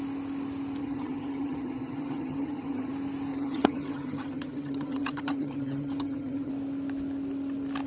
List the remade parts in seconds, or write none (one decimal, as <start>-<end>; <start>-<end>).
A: 0.8-2.9; 3.3-6.5